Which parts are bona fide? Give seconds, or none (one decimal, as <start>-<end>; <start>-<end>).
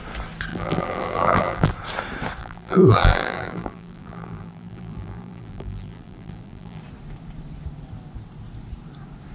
0.0-0.5; 1.7-2.4; 6.8-9.3